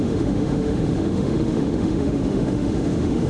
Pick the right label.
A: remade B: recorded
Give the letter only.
A